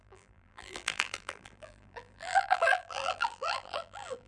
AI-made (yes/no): yes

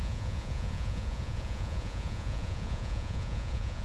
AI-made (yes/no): yes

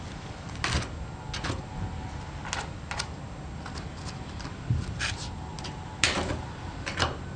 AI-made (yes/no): no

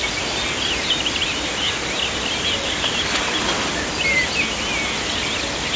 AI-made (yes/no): no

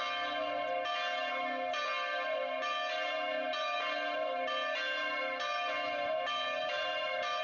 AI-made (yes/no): no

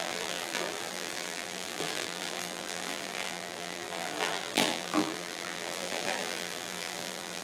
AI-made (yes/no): yes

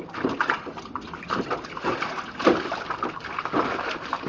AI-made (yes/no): no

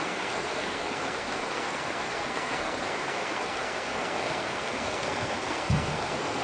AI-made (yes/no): yes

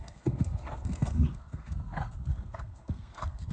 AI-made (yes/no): yes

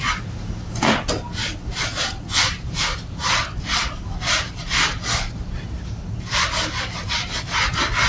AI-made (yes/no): no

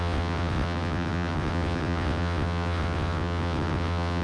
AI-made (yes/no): yes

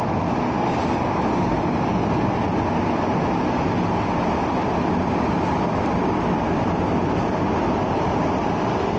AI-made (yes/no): no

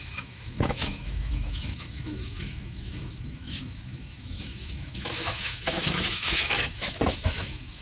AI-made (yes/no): yes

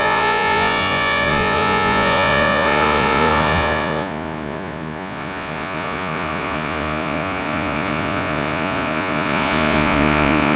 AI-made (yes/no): yes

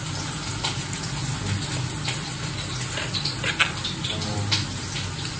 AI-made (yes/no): no